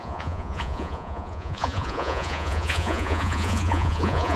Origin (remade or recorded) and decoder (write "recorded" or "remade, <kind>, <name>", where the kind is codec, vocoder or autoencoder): remade, vocoder, Vocos